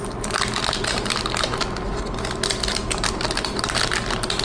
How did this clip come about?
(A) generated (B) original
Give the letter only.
B